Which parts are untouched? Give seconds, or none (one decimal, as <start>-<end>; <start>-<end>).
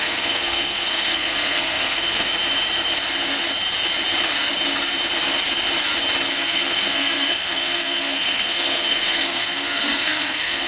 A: 2.3-6.3